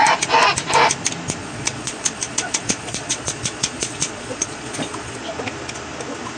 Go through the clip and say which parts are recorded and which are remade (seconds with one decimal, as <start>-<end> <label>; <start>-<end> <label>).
0.0-1.4 recorded; 1.4-5.2 remade; 5.2-6.4 recorded